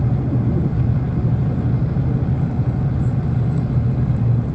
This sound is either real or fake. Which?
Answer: real